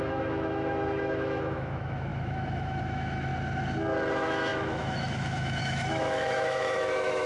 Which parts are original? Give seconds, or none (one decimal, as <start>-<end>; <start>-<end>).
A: 3.3-4.1